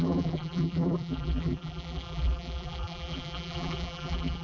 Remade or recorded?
remade